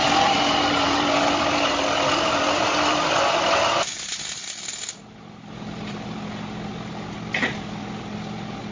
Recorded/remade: recorded